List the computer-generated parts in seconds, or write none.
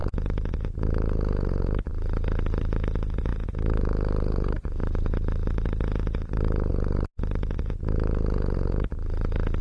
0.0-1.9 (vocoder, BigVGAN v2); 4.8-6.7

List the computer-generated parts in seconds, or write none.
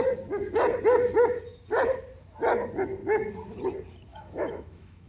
4.1-5.1 (autoencoder, DAC-VAE)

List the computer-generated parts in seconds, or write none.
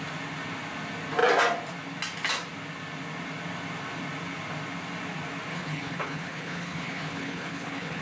5.5-8.0 (codec, HILCodec)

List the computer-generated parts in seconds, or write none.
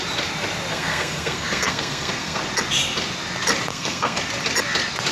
0.7-2.4 (codec, SNAC); 3.7-4.2